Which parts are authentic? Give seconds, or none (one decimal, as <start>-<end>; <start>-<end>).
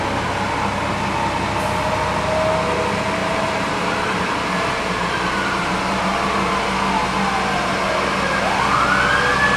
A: 0.0-3.2; 6.5-9.6